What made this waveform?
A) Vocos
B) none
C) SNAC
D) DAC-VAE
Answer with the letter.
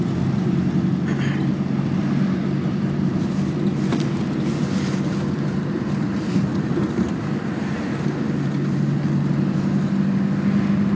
B